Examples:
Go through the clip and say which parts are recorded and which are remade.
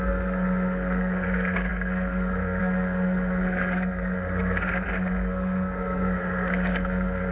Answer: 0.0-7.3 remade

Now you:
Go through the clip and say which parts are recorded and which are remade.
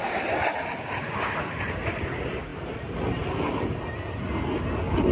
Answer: 0.0-5.1 recorded